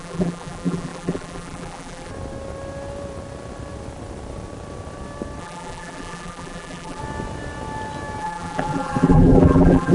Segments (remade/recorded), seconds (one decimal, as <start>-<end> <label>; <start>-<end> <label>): 0.0-2.1 remade; 2.1-5.4 recorded; 5.4-7.0 remade; 7.0-8.2 recorded; 8.2-9.9 remade